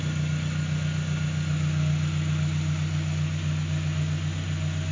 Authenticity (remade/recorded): recorded